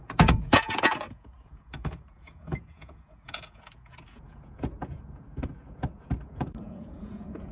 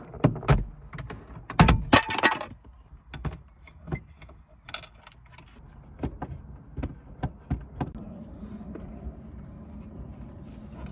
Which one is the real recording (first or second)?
second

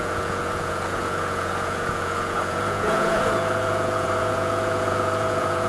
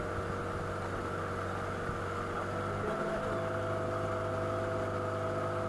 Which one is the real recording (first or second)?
second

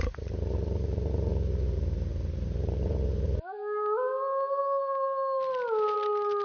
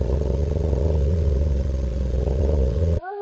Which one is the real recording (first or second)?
first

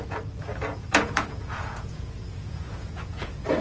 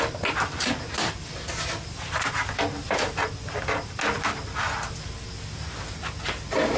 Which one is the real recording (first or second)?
second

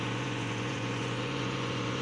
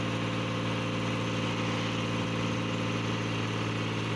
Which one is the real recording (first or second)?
second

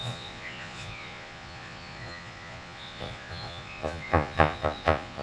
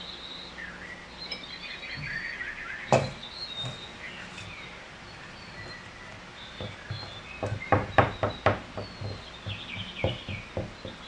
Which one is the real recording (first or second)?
second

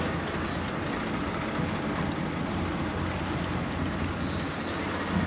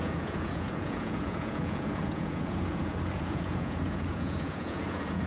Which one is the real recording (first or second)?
first